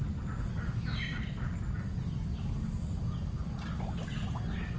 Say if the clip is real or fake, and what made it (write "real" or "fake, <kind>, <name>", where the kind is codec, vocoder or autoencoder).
real